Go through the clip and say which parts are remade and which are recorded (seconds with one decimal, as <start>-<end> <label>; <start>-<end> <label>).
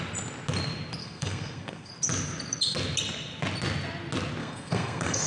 0.0-1.0 recorded; 1.0-1.9 remade; 1.9-4.4 recorded; 4.4-5.3 remade